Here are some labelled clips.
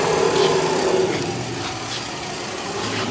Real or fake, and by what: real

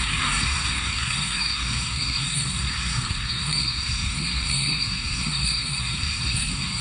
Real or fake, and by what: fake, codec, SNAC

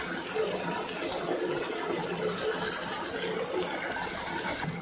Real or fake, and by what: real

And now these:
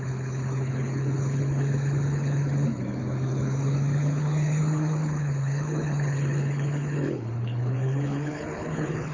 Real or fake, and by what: fake, codec, HILCodec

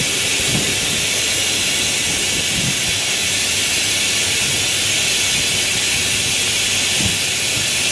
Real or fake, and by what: real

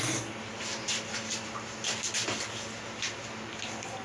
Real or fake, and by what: real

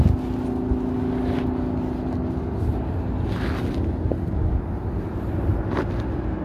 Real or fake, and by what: real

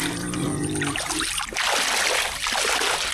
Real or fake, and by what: real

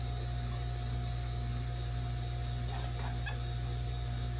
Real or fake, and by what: real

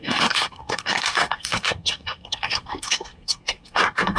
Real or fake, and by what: fake, codec, SNAC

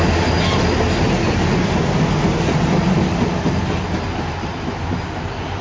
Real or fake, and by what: real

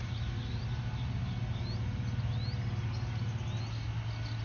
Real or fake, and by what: real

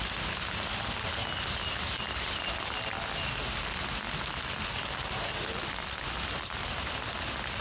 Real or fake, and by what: real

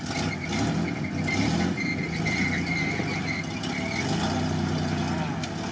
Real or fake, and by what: real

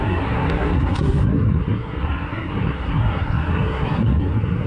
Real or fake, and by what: fake, codec, SNAC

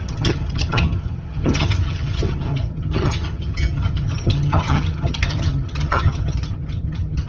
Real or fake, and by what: fake, vocoder, HiFi-GAN